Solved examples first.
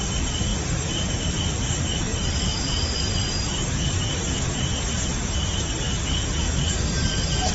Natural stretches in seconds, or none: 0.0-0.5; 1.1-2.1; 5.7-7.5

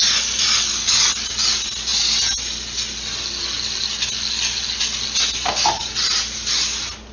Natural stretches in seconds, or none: 0.0-7.1

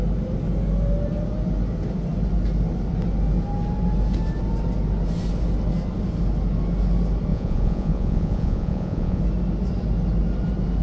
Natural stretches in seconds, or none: 0.0-7.3; 9.2-10.8

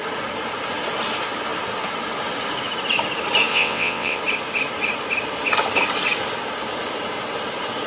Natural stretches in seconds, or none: 0.0-3.5; 4.2-7.9

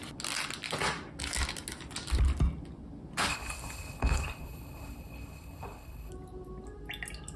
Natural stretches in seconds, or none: 0.0-3.3; 6.1-7.4

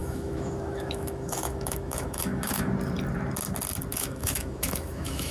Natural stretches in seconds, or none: 2.7-3.9